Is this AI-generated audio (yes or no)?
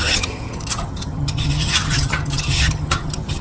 yes